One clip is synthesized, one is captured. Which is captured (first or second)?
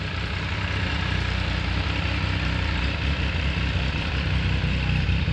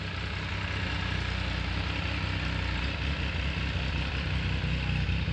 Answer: second